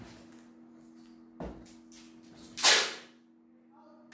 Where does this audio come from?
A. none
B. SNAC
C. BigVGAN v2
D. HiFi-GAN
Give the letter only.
A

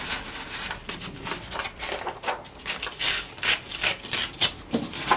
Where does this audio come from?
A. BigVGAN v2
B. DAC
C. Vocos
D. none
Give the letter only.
D